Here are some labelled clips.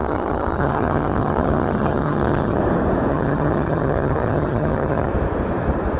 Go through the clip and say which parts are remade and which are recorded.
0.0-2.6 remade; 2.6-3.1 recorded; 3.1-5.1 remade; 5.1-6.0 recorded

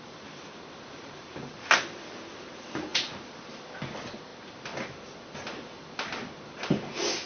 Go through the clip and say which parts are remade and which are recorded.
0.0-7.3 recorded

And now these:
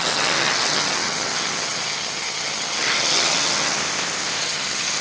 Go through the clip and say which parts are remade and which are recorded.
0.0-3.8 remade; 3.8-4.4 recorded; 4.4-5.0 remade